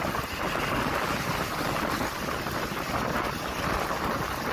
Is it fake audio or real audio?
real